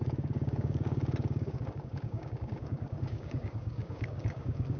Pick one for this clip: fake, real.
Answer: fake